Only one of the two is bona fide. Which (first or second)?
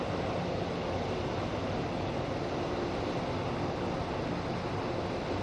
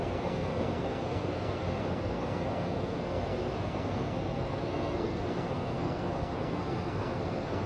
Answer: first